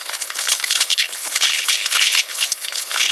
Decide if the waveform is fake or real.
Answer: fake